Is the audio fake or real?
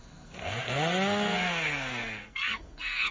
fake